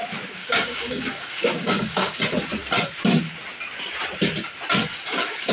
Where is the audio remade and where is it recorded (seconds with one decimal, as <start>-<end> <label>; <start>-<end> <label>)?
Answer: 0.0-0.4 recorded; 0.4-2.2 remade; 2.2-4.9 recorded; 4.9-5.5 remade